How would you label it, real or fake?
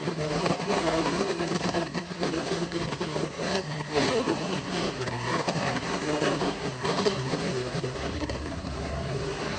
fake